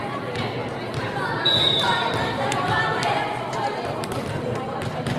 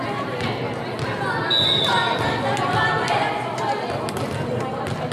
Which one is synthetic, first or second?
first